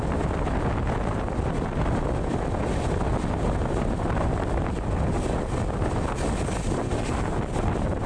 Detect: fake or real real